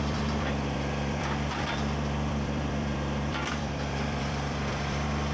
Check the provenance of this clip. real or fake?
fake